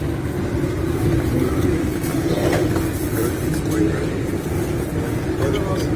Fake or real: real